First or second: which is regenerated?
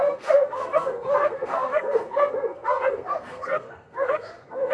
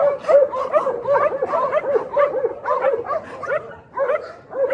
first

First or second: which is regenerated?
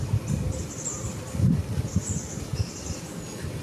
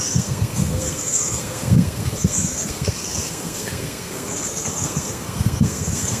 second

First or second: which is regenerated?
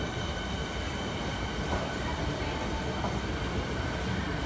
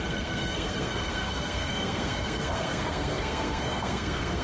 second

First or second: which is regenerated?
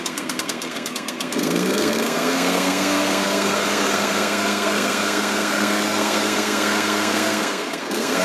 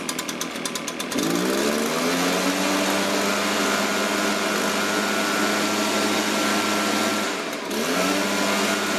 first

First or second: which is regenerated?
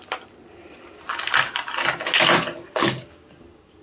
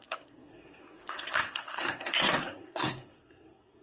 second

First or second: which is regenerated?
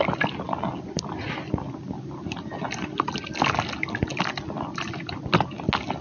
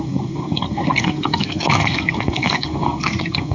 second